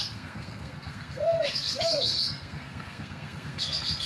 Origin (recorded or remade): remade